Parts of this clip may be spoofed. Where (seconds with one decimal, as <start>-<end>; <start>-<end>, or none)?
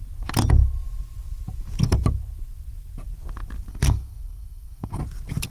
3.7-5.0